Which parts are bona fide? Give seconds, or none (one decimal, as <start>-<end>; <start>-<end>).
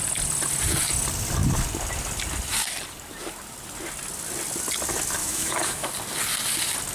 0.0-5.2; 5.9-6.9